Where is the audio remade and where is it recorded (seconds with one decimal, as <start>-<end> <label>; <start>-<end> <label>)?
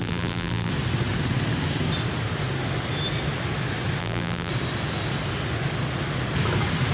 0.0-0.7 remade; 0.7-4.0 recorded; 4.0-4.5 remade; 4.5-6.9 recorded